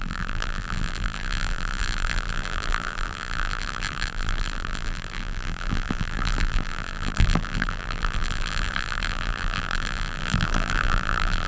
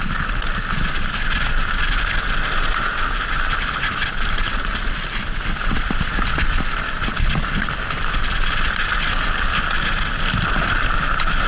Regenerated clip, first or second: first